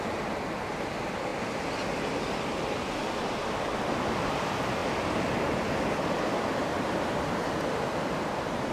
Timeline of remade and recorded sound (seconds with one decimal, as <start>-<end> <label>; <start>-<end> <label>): 0.0-8.7 recorded